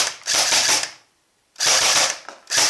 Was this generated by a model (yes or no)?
yes